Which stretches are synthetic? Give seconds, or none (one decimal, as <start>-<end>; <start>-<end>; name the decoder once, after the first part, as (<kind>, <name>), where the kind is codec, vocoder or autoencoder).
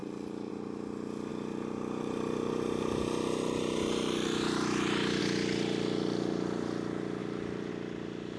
0.0-0.5 (vocoder, BigVGAN v2); 1.3-5.2; 7.2-7.7